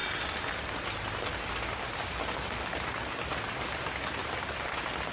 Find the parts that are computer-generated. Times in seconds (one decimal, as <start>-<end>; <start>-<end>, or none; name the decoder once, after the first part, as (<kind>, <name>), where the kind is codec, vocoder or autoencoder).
none

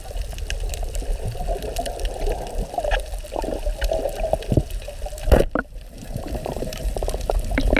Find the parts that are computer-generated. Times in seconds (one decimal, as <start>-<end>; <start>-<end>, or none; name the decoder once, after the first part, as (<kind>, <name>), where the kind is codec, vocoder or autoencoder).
5.6-6.9 (vocoder, BigVGAN v2)

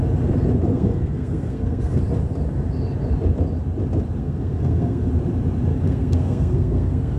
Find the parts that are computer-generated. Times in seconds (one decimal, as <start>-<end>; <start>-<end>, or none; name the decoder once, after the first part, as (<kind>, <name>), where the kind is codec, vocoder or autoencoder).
0.7-2.0 (codec, SNAC); 4.2-5.1; 5.7-7.2